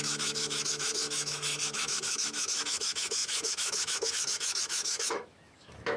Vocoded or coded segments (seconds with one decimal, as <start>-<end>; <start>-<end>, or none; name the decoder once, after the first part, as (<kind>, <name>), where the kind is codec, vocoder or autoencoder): 0.0-6.0 (autoencoder, DAC-VAE)